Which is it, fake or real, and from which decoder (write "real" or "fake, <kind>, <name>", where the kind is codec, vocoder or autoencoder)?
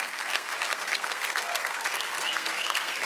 fake, codec, SNAC